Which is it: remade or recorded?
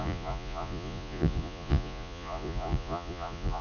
remade